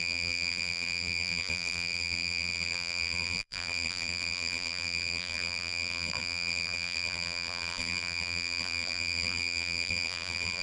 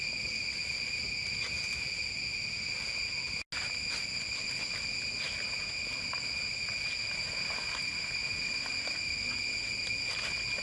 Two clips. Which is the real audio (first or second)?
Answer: second